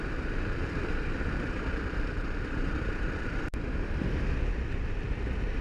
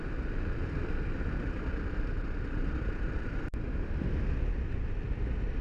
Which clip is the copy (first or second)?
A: first